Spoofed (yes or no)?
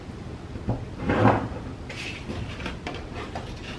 no